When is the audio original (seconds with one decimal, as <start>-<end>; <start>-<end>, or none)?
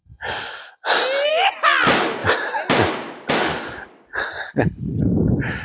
0.0-4.4; 5.0-5.6